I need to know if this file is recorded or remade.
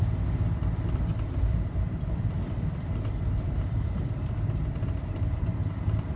remade